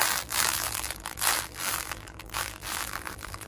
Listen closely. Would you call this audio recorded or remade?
remade